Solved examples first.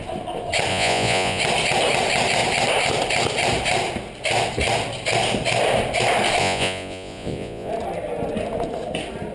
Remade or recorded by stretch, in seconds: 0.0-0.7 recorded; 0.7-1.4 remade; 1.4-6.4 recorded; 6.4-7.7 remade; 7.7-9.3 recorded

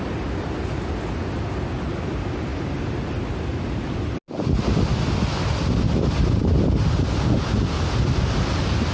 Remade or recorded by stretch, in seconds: 0.0-8.9 recorded

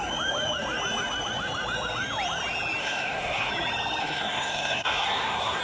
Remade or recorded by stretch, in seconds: 0.0-2.8 recorded; 2.8-3.5 remade; 3.5-4.0 recorded; 4.0-5.6 remade